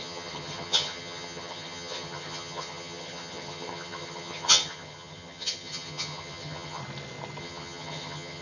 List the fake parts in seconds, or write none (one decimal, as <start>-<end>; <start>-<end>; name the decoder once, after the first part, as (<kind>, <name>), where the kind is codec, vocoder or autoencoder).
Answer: 0.0-6.8 (vocoder, HiFi-GAN); 7.4-8.4